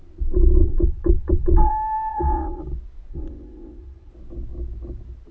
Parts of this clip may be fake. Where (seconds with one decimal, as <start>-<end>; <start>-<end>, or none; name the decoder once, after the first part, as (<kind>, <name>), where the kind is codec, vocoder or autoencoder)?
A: 0.6-1.7 (vocoder, WaveNeXt); 2.1-2.6; 3.1-4.1